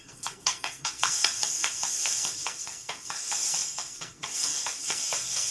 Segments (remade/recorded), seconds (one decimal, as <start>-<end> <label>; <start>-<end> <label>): 0.0-5.5 remade